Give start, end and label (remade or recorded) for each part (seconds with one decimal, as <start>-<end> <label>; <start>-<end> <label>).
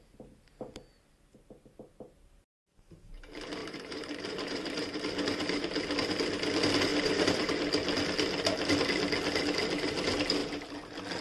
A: 0.0-3.6 recorded; 3.6-5.0 remade; 5.0-6.9 recorded; 6.9-7.5 remade; 7.5-11.2 recorded